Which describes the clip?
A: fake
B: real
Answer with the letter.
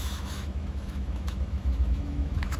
A